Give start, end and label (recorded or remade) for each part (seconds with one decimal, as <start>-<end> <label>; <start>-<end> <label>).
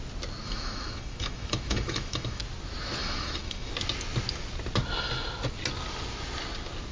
0.0-0.4 recorded; 0.4-2.4 remade; 2.4-3.0 recorded; 3.0-3.7 remade; 3.7-6.9 recorded